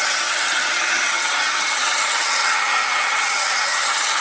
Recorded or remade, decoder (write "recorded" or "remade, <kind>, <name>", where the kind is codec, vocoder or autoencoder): remade, vocoder, HiFi-GAN